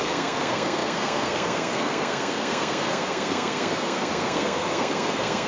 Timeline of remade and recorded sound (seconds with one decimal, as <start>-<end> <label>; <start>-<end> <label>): 0.0-5.5 remade